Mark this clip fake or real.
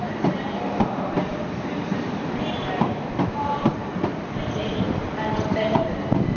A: fake